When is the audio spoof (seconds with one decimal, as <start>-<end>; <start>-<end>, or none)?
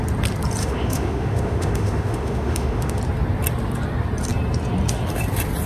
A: 0.6-3.0